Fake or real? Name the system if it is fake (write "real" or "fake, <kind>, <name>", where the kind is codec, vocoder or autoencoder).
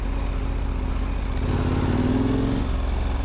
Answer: real